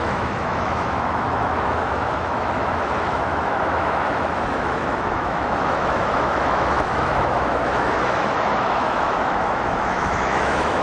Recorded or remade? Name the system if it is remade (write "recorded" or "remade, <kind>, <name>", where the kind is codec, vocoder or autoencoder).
remade, autoencoder, DAC-VAE